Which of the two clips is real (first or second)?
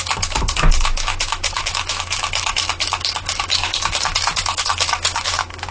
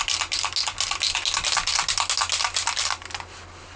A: second